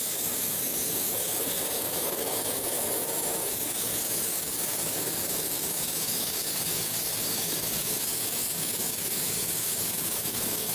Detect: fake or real fake